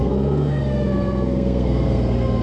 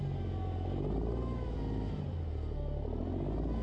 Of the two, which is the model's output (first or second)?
first